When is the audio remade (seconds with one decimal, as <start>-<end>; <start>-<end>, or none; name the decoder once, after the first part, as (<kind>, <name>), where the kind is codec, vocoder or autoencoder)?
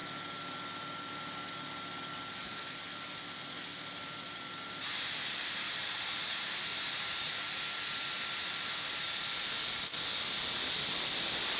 2.3-6.7 (vocoder, BigVGAN v2); 8.5-11.6